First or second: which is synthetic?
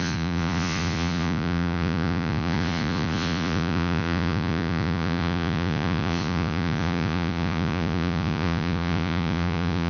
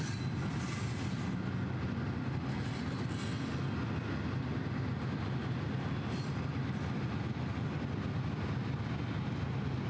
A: first